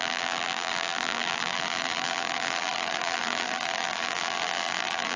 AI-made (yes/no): yes